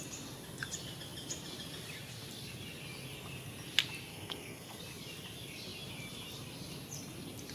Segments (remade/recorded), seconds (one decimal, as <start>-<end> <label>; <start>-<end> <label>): 0.0-4.1 recorded; 4.1-4.8 remade; 4.8-7.5 recorded